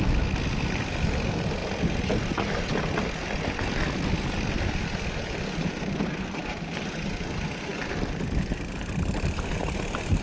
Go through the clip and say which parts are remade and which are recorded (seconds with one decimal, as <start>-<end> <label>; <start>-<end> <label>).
0.0-10.2 recorded